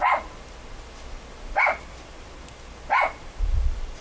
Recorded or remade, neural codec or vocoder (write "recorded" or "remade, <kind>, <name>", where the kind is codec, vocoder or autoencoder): recorded